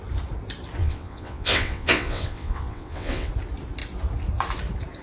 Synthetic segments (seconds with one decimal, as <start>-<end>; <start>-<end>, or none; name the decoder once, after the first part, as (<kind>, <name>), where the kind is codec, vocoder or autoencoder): 0.8-3.3 (vocoder, WaveNeXt)